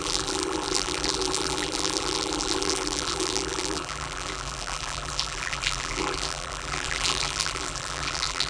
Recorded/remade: remade